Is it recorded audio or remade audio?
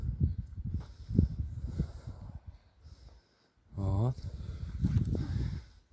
recorded